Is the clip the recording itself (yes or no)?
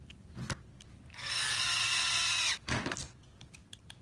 yes